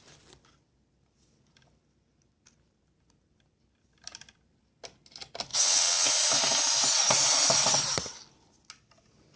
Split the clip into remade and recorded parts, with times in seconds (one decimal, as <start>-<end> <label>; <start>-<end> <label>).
0.0-5.5 recorded; 5.5-6.1 remade; 6.1-9.4 recorded

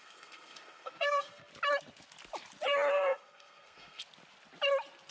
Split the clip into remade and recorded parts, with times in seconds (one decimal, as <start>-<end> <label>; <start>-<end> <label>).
0.0-1.5 remade; 1.5-2.9 recorded; 2.9-4.0 remade; 4.0-5.1 recorded

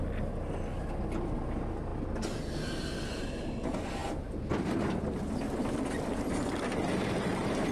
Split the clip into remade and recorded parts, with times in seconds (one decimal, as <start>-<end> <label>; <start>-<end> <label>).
0.0-7.7 recorded

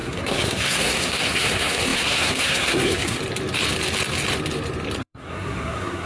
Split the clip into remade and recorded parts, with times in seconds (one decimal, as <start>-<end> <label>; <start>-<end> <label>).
0.0-3.2 remade; 3.2-5.0 recorded; 5.0-6.1 remade

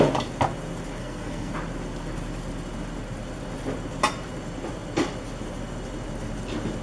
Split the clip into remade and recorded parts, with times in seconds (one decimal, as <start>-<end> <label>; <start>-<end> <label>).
0.0-1.0 recorded; 1.0-1.5 remade; 1.5-6.8 recorded